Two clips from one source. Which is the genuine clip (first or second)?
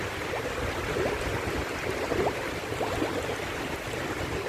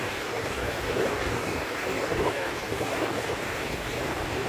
first